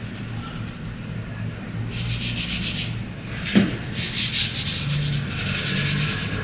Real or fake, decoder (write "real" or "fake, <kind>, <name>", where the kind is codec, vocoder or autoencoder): real